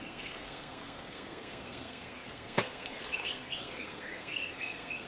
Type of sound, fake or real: fake